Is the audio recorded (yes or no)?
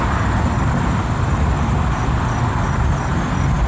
yes